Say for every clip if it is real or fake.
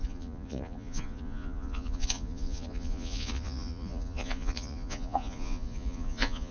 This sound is fake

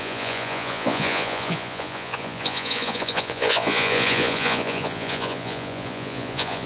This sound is fake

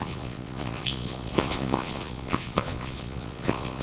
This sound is fake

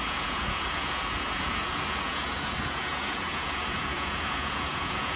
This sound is fake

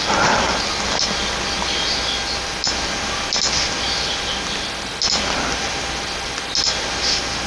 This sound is real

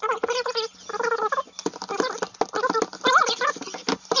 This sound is real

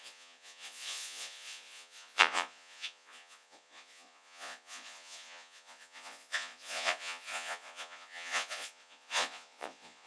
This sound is fake